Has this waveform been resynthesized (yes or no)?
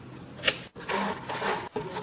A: no